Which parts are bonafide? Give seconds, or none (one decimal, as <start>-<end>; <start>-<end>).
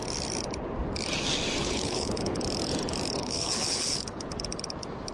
0.0-1.6; 2.4-3.2; 4.2-5.1